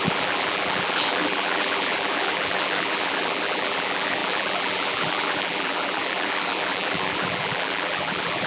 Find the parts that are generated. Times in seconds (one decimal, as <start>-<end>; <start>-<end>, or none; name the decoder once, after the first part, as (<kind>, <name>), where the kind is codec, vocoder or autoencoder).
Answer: 0.0-8.5 (vocoder, BigVGAN v2)